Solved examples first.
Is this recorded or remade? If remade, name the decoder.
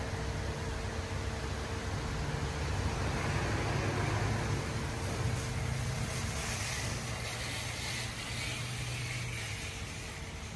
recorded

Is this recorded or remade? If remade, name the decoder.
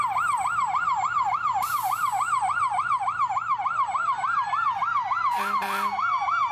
remade, vocoder, BigVGAN v2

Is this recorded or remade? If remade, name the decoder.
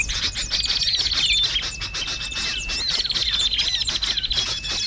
recorded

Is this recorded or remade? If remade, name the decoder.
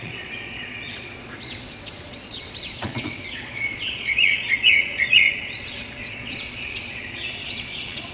remade, vocoder, Vocos